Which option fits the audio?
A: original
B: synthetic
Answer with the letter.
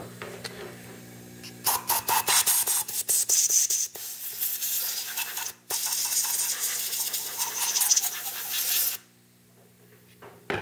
A